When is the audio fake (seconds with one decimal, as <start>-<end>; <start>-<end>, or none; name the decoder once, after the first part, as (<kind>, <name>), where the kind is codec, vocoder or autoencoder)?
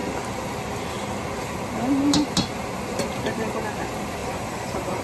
4.2-5.0 (vocoder, Vocos)